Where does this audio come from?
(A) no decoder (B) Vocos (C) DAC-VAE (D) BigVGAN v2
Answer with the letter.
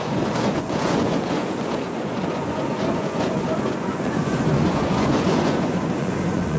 B